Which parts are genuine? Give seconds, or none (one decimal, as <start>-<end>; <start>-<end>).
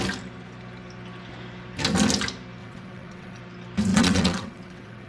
0.0-2.6; 3.4-3.9